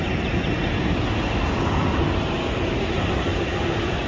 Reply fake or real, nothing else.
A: real